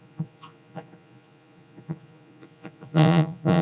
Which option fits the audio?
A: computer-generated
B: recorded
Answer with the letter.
A